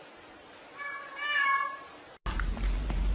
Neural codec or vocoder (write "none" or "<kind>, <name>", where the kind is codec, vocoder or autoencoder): none